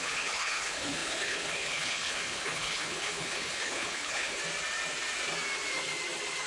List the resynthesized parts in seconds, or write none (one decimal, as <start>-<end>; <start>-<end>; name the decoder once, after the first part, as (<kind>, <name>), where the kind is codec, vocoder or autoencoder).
0.0-4.4 (codec, HILCodec)